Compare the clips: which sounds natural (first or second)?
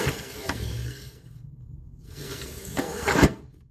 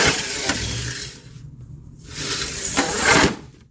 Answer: second